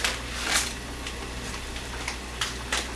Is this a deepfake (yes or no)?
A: no